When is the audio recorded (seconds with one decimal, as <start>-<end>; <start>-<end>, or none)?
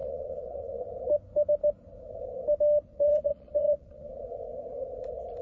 0.8-2.9; 4.1-5.4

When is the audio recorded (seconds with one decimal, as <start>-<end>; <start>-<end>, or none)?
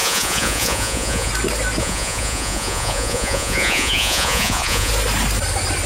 1.3-1.8; 4.9-5.9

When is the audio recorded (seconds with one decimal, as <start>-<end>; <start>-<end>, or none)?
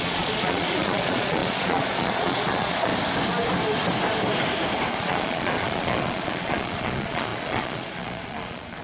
2.9-4.9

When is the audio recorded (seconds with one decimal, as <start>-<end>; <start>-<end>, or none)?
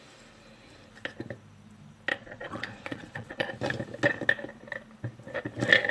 0.0-2.1; 3.5-5.9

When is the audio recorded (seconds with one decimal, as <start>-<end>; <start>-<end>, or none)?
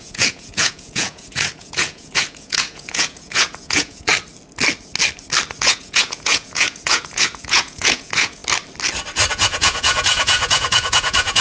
4.1-5.6; 8.4-9.3